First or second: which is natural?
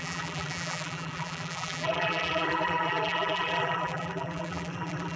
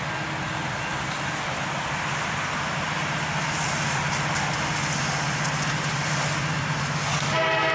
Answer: second